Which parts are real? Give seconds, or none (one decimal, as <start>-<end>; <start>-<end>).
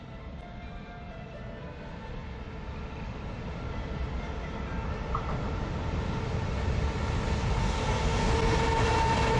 0.0-7.8; 8.3-9.4